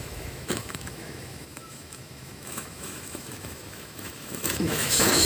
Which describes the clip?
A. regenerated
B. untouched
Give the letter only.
A